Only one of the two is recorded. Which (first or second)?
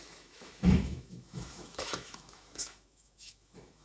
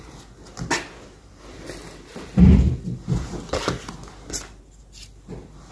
second